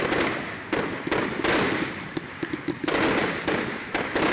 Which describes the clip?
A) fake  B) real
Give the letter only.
B